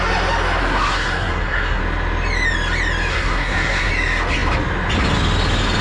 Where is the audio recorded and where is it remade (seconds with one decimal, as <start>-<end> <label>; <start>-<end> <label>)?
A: 0.0-0.6 recorded; 0.6-1.8 remade; 1.8-3.1 recorded; 3.1-3.9 remade; 3.9-5.8 recorded